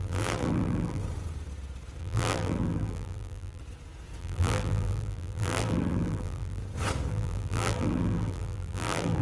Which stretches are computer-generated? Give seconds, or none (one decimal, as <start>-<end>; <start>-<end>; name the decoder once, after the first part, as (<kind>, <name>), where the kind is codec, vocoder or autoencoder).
0.0-1.0 (vocoder, BigVGAN v2); 2.0-3.6; 4.2-6.6; 7.1-9.2